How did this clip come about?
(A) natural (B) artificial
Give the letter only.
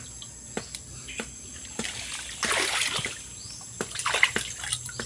A